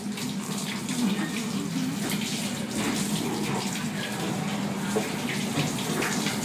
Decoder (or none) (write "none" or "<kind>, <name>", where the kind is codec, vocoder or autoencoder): none